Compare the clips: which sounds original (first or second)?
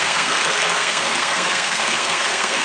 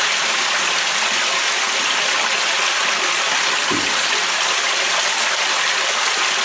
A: second